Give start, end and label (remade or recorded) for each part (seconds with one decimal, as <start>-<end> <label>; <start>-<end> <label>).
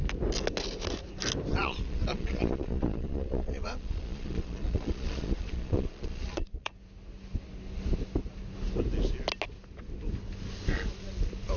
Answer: 0.0-1.5 recorded; 1.5-6.7 remade; 6.7-11.6 recorded